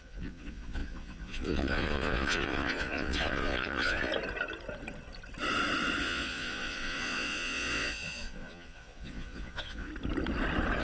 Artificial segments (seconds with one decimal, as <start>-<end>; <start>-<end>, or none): 0.0-4.1; 6.0-9.9